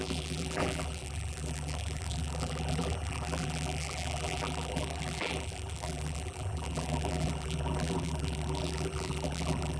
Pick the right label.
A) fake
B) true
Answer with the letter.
A